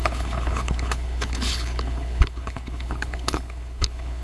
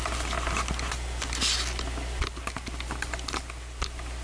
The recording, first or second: second